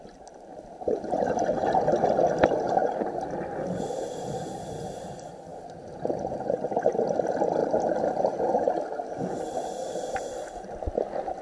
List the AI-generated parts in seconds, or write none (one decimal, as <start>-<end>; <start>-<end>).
7.6-8.2